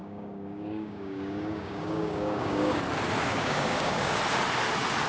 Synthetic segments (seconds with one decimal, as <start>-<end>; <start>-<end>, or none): 0.0-2.8; 3.3-4.2